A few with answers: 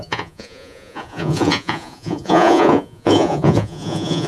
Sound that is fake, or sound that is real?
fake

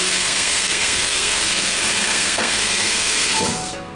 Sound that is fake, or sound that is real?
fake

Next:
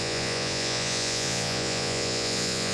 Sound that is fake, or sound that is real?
fake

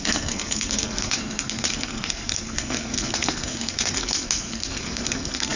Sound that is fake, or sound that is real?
fake